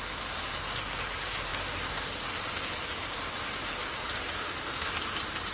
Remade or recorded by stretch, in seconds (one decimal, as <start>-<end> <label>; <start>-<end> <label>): 0.0-5.5 recorded